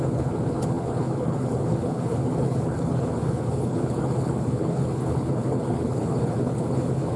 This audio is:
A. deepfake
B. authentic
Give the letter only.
A